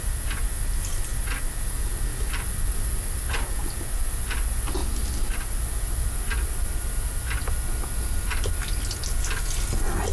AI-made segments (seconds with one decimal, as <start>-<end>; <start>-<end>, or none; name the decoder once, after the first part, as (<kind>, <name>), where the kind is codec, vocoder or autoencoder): 2.1-3.8 (vocoder, BigVGAN v2); 4.8-5.6